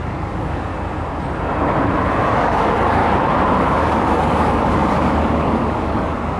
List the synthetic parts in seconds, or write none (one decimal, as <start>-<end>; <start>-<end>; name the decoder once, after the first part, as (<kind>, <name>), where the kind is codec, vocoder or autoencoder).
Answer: 0.0-0.7 (codec, DAC); 2.4-3.0; 3.6-6.4